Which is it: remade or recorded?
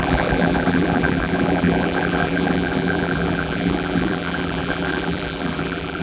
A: remade